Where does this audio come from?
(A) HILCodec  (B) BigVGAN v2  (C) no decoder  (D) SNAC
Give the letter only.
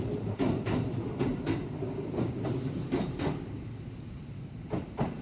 C